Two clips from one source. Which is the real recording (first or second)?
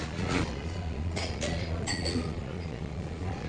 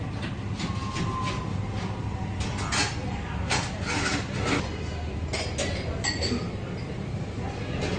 second